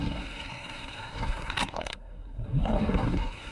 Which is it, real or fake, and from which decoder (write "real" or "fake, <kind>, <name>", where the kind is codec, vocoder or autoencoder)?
fake, codec, SNAC